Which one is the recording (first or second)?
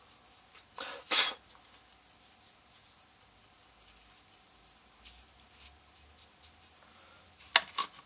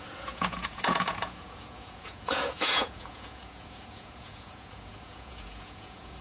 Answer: first